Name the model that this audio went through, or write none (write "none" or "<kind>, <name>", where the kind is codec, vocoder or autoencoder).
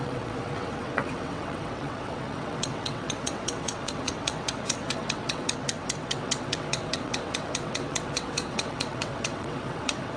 vocoder, WaveNeXt